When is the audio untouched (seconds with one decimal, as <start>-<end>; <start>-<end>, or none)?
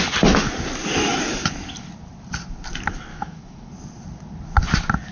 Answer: 0.0-3.1; 3.7-5.1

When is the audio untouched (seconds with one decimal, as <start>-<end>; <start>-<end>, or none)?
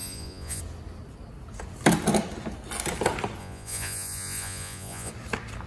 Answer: 0.6-3.4; 5.1-5.7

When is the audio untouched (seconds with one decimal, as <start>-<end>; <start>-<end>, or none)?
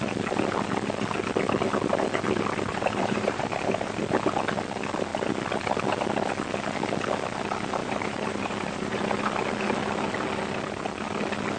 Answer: 0.0-2.7; 4.0-7.8; 9.0-11.6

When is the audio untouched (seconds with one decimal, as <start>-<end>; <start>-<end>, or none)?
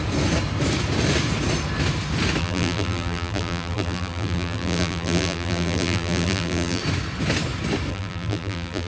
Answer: 0.0-2.4; 6.8-7.9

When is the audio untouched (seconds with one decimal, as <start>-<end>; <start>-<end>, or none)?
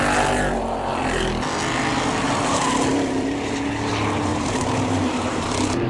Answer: 0.0-2.9; 3.5-4.3; 5.4-5.9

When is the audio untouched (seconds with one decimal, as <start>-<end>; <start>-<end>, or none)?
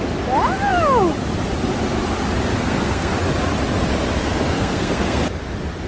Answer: 0.0-2.5; 3.1-4.2; 5.2-5.9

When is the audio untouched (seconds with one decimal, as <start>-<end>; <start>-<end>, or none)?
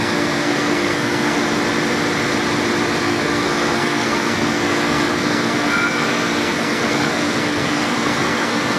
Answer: 1.4-3.0